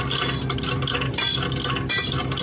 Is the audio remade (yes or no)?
no